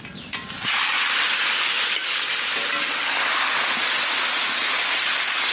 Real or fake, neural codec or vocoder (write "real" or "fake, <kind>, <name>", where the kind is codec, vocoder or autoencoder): real